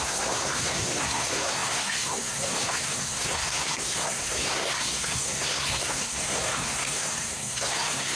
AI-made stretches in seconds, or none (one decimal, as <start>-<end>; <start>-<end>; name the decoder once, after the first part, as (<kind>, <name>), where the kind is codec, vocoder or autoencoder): 0.0-8.2 (codec, SNAC)